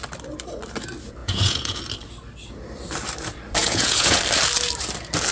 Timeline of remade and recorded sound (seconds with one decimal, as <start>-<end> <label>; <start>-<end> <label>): 0.0-1.2 recorded; 1.2-1.8 remade; 1.8-3.6 recorded; 3.6-4.2 remade; 4.2-5.3 recorded